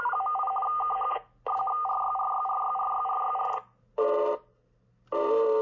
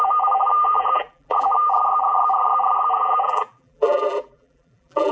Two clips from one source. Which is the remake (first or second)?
second